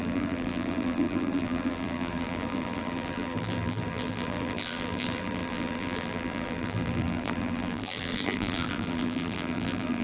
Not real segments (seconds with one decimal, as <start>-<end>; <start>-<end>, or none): 0.0-10.0